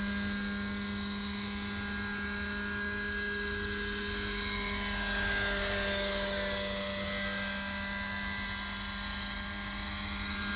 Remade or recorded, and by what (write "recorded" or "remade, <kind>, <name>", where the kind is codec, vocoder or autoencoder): recorded